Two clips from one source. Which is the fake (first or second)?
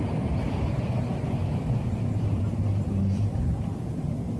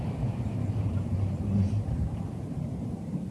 second